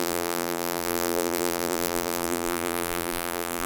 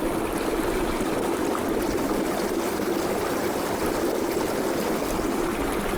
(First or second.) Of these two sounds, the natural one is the second